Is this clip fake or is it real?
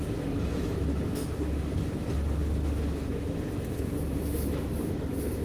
fake